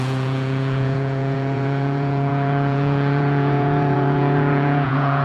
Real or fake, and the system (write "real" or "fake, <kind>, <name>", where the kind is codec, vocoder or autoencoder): fake, vocoder, Vocos